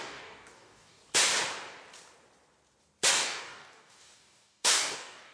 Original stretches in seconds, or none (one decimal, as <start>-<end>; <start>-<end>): 1.0-3.1